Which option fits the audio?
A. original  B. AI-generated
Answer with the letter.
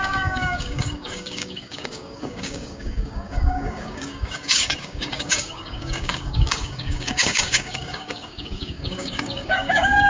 B